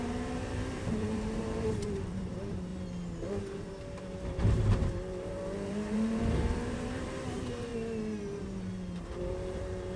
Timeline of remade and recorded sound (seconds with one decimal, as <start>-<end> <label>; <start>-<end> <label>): 0.0-2.7 remade; 2.7-4.0 recorded; 4.0-7.7 remade; 7.7-8.4 recorded; 8.4-10.0 remade